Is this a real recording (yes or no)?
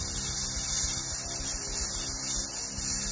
yes